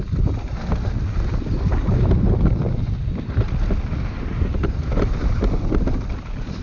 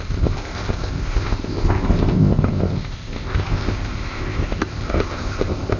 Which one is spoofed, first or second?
second